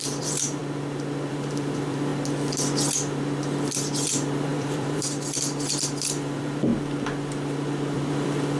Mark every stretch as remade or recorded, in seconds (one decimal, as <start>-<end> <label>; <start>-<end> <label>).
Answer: 0.0-0.6 remade; 0.6-1.3 recorded; 1.3-2.1 remade; 2.1-3.4 recorded; 3.4-6.7 remade; 6.7-8.1 recorded; 8.1-8.6 remade